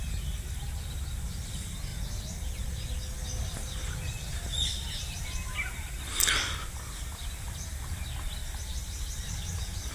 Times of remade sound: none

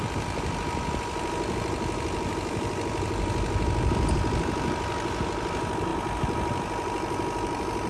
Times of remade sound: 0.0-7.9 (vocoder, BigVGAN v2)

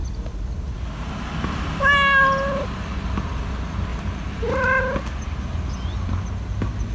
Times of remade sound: 3.9-4.8 (vocoder, BigVGAN v2)